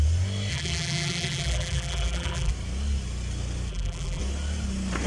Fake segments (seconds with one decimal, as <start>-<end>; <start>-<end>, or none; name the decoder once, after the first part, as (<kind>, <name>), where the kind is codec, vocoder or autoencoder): 0.5-2.5 (vocoder, BigVGAN v2); 3.7-4.2